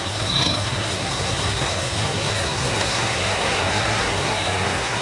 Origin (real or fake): fake